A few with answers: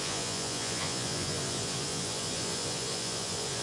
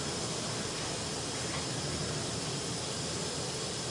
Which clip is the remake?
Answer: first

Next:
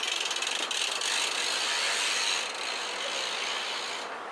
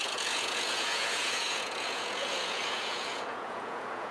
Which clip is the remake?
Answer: second